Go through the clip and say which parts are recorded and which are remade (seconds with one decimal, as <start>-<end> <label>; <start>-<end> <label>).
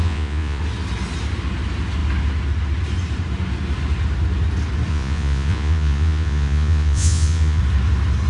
0.0-0.6 remade; 0.6-4.9 recorded; 4.9-7.6 remade; 7.6-8.3 recorded